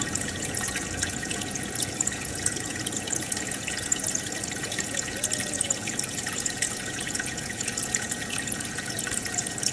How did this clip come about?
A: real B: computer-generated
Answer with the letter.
B